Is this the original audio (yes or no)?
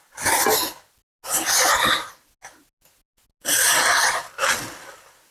yes